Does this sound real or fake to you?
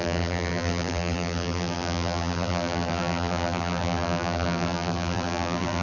fake